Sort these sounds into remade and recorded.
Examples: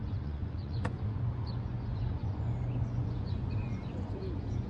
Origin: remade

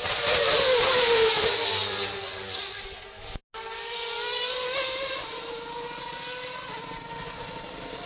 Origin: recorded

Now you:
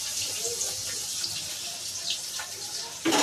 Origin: recorded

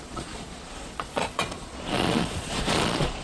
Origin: remade